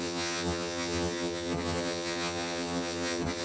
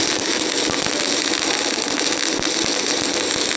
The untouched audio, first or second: second